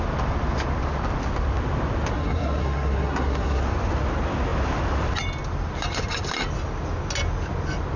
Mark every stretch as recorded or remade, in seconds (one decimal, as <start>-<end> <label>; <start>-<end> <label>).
0.0-2.1 recorded; 2.1-3.6 remade; 3.6-8.0 recorded